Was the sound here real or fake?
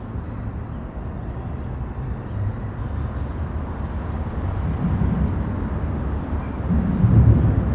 real